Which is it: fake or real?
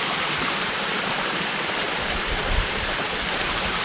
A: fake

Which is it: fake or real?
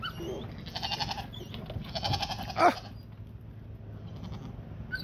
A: real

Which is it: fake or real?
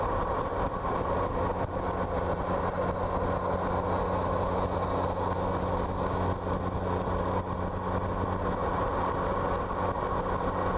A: real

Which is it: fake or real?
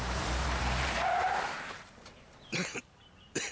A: fake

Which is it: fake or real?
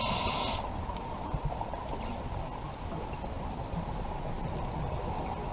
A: real